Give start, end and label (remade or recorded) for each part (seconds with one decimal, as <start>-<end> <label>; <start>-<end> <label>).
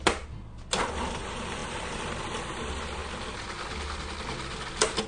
0.0-5.1 recorded